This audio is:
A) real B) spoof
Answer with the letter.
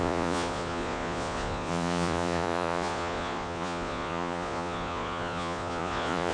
B